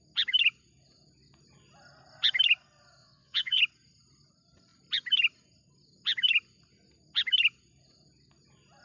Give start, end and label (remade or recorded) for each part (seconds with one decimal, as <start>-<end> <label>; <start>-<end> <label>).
0.0-3.0 recorded; 3.0-3.6 remade; 3.6-8.8 recorded